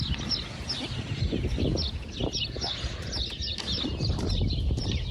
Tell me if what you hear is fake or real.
real